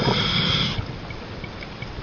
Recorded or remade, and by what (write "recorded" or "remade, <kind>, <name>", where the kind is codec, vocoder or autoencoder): recorded